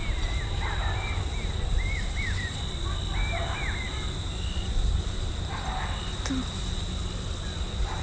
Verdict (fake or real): real